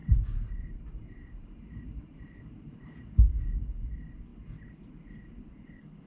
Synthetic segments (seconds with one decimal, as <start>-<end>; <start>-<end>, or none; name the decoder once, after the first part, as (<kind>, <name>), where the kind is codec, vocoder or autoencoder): 0.0-3.1 (vocoder, BigVGAN v2)

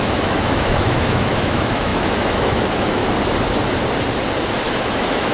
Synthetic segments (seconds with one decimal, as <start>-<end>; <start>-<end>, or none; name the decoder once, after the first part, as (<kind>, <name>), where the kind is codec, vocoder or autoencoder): 0.0-3.0 (autoencoder, DAC-VAE); 4.7-5.3